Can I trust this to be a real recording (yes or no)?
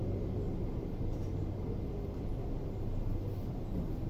yes